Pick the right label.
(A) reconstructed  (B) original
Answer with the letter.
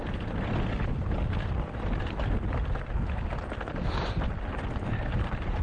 B